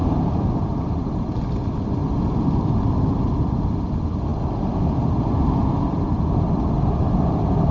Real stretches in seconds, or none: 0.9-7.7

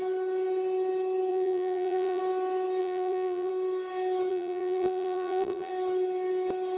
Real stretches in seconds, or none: 0.0-1.3; 2.2-2.8; 3.5-4.3; 5.7-6.8

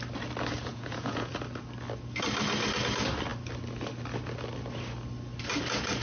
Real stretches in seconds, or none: 0.0-0.7; 1.3-6.0